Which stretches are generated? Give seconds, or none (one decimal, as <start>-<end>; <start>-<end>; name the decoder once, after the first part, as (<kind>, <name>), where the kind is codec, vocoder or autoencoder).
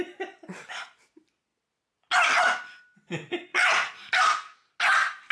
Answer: none